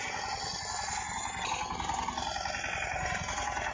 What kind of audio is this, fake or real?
real